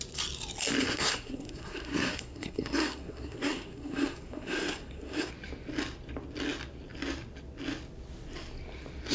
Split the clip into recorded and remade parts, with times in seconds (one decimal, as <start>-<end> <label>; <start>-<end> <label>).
0.0-0.8 recorded; 0.8-5.3 remade; 5.3-9.1 recorded